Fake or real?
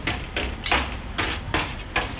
real